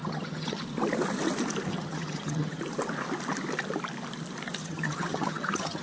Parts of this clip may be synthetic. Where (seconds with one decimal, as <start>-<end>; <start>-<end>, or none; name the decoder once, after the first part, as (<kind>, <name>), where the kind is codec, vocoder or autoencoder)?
0.0-0.6 (vocoder, HiFi-GAN); 1.7-2.6; 4.6-5.8